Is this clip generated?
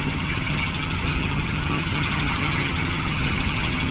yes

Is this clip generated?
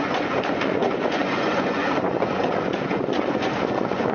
yes